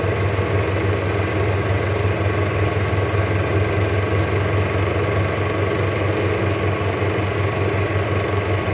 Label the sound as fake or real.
real